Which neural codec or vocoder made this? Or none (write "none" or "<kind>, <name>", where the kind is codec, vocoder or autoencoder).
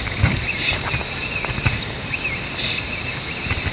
none